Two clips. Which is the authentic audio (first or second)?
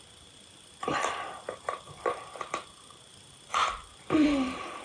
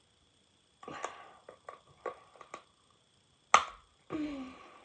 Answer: second